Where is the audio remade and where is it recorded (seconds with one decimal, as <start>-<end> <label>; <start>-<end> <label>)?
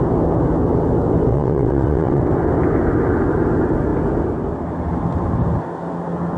0.0-1.3 recorded; 1.3-2.2 remade; 2.2-6.4 recorded